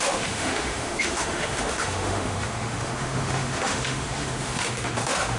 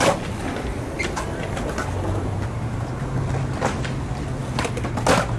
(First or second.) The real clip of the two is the second